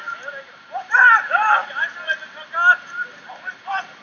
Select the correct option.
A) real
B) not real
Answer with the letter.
A